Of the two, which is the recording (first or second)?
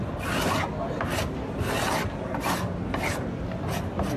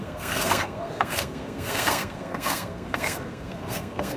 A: first